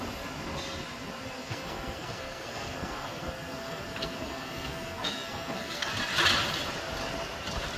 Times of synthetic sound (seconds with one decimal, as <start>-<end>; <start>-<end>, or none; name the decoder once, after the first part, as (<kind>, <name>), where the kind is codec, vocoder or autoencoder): 1.4-5.9 (codec, SNAC)